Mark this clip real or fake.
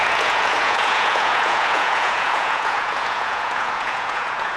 fake